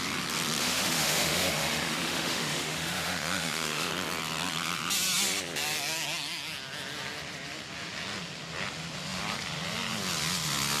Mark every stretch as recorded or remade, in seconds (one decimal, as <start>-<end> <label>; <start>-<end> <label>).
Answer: 0.0-0.6 recorded; 0.6-3.9 remade; 3.9-10.8 recorded